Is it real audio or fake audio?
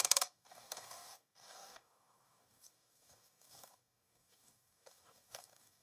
fake